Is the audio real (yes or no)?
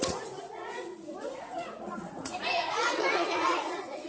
no